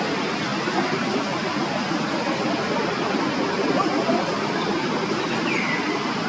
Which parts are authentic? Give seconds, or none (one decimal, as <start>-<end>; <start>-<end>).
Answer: 0.0-6.3